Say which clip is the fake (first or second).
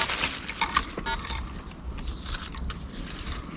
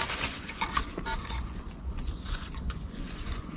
second